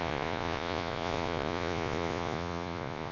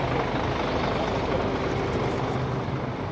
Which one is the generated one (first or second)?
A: first